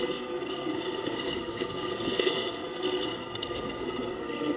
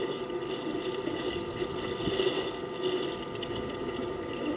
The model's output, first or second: first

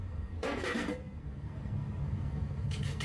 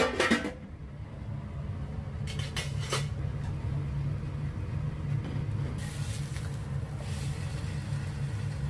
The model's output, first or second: first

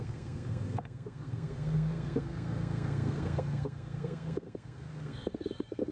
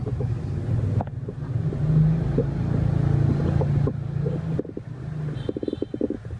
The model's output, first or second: first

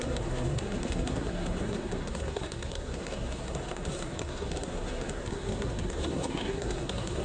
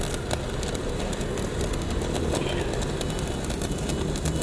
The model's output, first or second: first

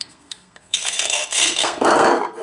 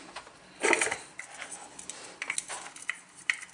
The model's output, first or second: first